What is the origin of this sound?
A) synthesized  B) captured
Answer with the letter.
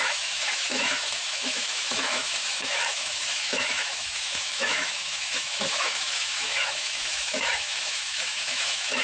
A